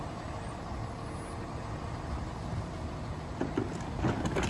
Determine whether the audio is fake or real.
real